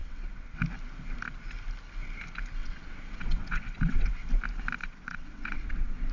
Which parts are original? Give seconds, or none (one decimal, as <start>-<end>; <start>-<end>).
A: 0.6-2.6; 4.3-4.8